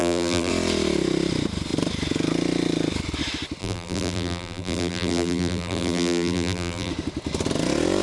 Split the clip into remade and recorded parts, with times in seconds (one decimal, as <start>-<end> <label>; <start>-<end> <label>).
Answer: 0.0-0.5 remade; 0.5-3.6 recorded; 3.6-6.9 remade; 6.9-8.0 recorded